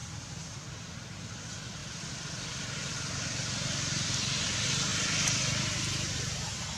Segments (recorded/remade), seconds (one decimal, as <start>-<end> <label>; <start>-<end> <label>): 0.0-1.8 recorded; 1.8-2.9 remade; 2.9-6.8 recorded